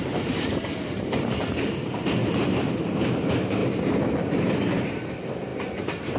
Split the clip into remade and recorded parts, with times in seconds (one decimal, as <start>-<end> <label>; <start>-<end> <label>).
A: 0.0-3.6 remade; 3.6-5.1 recorded; 5.1-6.2 remade